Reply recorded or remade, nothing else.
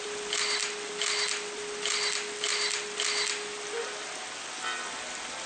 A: recorded